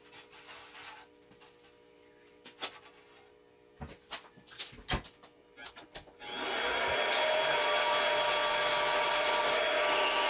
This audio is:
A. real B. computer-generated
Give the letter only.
A